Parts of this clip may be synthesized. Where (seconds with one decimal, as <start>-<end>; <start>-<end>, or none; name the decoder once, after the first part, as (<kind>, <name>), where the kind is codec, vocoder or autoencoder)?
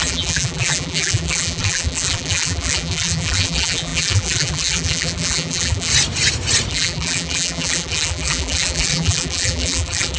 0.0-5.9 (vocoder, BigVGAN v2); 6.7-10.2